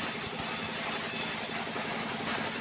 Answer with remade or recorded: recorded